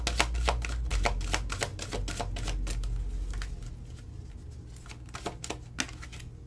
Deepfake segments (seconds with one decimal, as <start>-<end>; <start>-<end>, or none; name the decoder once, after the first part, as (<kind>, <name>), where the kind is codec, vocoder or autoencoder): none